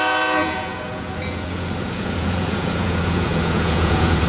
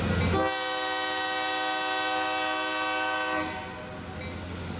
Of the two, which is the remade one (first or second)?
first